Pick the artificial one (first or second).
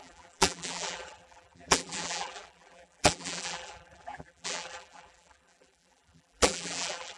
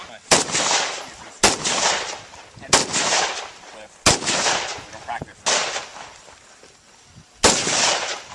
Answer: first